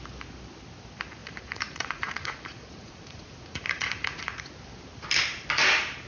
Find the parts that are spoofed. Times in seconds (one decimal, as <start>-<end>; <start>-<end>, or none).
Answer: 1.2-4.5